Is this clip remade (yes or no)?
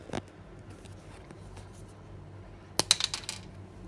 no